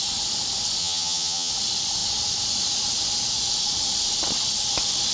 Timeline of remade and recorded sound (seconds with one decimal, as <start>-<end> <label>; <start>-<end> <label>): 0.0-0.8 recorded; 0.8-1.5 remade; 1.5-5.1 recorded

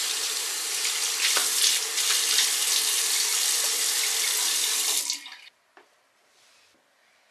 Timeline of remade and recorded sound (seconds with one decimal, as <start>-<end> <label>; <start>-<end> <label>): 0.0-7.3 recorded

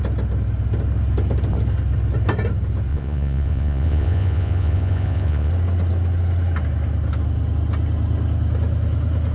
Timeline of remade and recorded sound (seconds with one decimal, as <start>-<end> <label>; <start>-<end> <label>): 0.0-2.9 recorded; 2.9-5.5 remade; 5.5-9.3 recorded

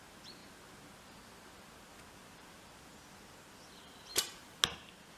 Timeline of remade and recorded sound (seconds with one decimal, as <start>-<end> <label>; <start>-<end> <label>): 0.0-4.1 recorded; 4.1-4.6 remade; 4.6-5.2 recorded